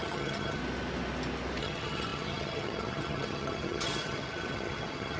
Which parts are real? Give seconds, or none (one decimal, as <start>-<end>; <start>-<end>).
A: 0.6-1.6